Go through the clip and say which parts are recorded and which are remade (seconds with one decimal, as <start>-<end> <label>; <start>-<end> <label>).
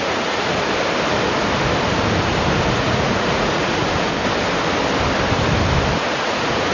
0.0-0.5 remade; 0.5-2.7 recorded; 2.7-3.8 remade; 3.8-6.1 recorded; 6.1-6.7 remade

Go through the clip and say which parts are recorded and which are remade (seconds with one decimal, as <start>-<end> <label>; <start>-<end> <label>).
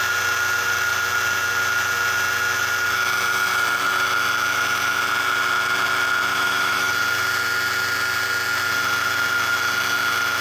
0.0-6.3 recorded; 6.3-6.9 remade; 6.9-10.4 recorded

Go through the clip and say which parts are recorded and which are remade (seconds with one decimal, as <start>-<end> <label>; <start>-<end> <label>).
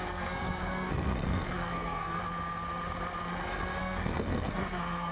0.0-2.2 remade; 2.2-3.8 recorded; 3.8-5.1 remade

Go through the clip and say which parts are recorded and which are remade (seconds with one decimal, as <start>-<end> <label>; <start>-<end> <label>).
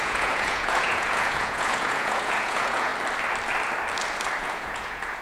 0.0-2.9 remade; 2.9-4.4 recorded; 4.4-5.2 remade